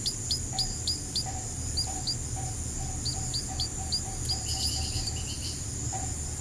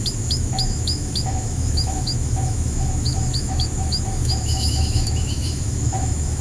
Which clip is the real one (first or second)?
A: first